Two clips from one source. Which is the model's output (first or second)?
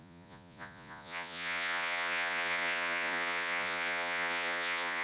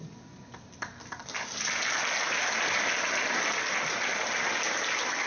first